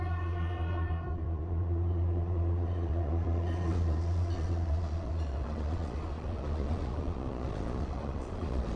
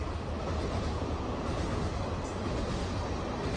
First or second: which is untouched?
second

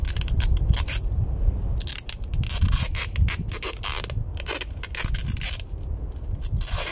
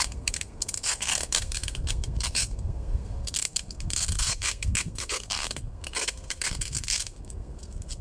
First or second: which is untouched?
first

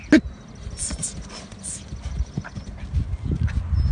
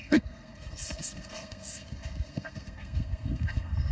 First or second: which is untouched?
first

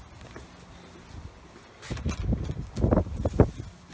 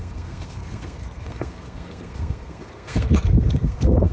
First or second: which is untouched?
first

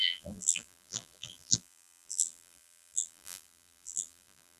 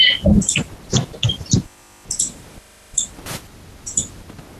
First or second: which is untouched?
second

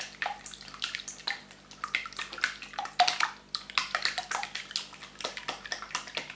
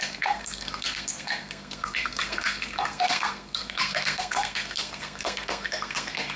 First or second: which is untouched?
first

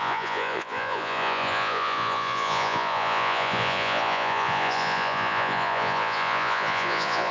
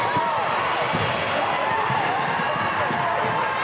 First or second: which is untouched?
second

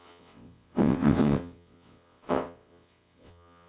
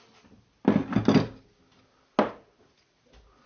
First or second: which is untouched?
second